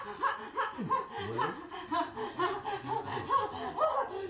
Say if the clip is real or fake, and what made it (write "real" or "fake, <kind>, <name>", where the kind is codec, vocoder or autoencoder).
real